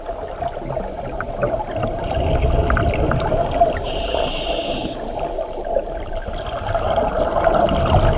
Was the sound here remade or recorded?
recorded